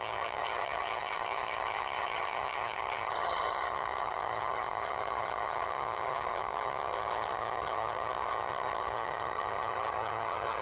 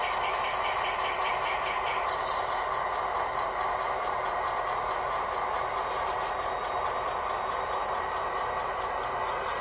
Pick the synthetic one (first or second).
first